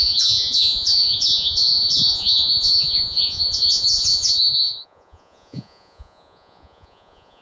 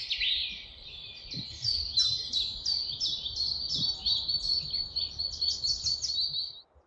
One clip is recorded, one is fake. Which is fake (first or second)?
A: first